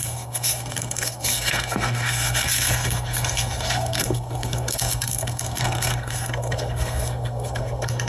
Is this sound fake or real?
fake